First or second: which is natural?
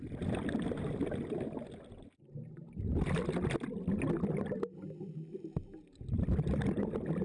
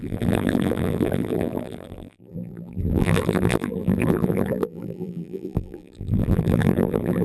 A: first